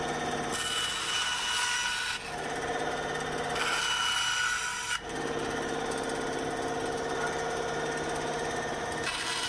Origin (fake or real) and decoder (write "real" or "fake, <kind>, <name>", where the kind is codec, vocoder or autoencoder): real